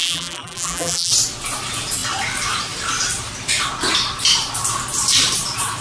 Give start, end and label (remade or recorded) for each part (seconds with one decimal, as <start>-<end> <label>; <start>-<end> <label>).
0.0-1.1 remade; 1.1-5.8 recorded